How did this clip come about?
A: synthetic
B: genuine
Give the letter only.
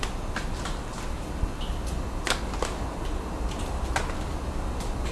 B